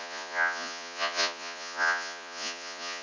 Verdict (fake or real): fake